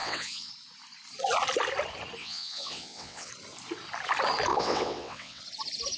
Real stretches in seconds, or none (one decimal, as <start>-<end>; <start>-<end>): 0.5-2.2; 3.3-4.5; 5.4-6.0